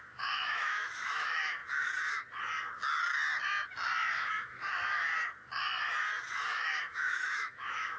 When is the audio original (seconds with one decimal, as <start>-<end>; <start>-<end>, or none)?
1.6-4.1; 5.1-6.3